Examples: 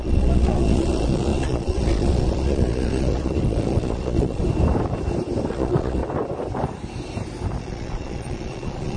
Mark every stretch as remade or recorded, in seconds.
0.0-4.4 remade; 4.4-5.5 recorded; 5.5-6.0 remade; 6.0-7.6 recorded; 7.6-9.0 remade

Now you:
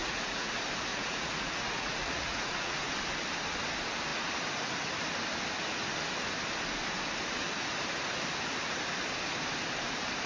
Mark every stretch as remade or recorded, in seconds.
0.0-0.5 remade; 0.5-0.9 recorded; 0.9-2.8 remade; 2.8-10.3 recorded